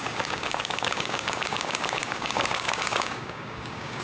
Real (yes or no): no